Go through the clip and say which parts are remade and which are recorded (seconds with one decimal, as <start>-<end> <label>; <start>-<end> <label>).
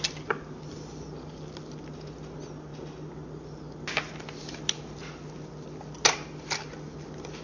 0.0-7.4 recorded